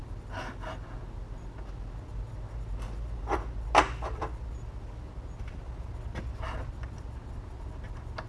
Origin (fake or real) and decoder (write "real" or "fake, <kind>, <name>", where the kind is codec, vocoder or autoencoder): real